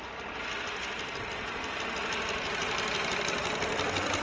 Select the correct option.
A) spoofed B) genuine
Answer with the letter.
B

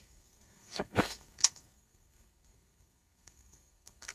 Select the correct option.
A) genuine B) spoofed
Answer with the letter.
B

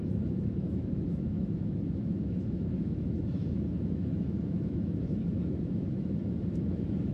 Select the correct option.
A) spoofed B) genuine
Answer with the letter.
A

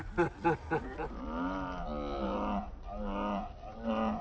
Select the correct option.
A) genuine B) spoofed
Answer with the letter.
A